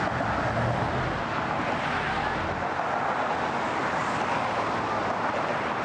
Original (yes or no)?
yes